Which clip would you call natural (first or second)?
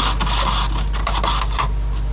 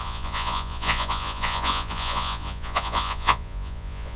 first